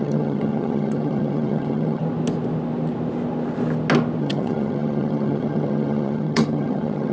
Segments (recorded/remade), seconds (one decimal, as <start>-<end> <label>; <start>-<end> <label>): 0.0-2.0 remade; 2.0-4.2 recorded; 4.2-7.1 remade